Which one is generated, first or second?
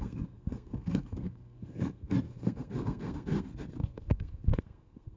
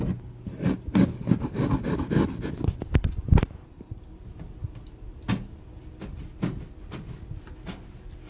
first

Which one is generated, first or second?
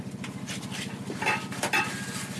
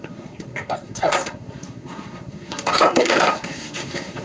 second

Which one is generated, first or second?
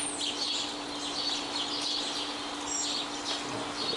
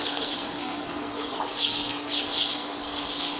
second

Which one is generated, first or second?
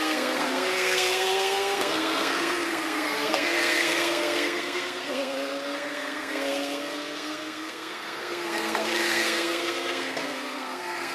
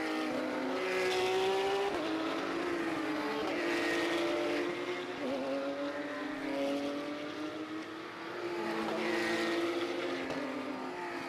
first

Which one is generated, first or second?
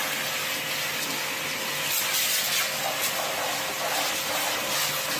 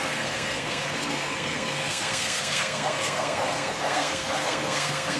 second